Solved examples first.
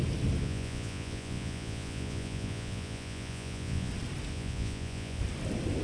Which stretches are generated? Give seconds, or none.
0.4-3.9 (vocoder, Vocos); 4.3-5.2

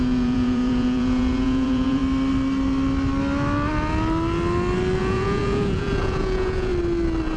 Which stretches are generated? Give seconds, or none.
0.0-2.0 (vocoder, Vocos); 5.0-6.7

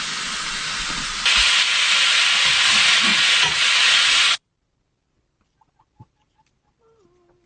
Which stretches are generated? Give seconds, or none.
3.1-4.5 (vocoder, Vocos)